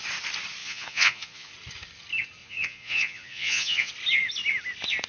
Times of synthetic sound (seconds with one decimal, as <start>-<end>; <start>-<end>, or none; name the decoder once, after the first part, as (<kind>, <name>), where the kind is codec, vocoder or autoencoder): 0.6-1.5 (vocoder, Vocos); 2.4-3.9